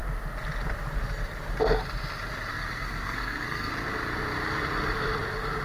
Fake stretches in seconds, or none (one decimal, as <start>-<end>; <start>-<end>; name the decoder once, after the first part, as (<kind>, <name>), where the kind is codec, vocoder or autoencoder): 2.5-3.7 (codec, SNAC)